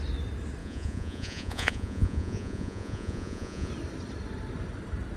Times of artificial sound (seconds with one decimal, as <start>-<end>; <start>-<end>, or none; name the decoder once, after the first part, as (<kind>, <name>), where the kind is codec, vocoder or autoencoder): 0.6-3.7 (vocoder, Vocos)